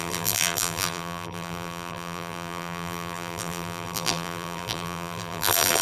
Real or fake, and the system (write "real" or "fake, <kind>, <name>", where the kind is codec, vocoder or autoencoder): fake, vocoder, BigVGAN v2